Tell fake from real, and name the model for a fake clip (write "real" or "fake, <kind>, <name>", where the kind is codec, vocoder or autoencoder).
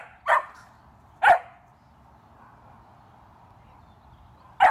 real